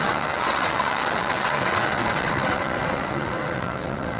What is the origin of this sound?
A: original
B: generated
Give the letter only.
B